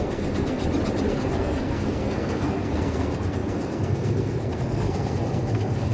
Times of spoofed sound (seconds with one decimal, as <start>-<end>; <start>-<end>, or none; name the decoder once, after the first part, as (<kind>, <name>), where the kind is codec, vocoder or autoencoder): 0.0-0.6 (codec, SNAC); 1.1-5.9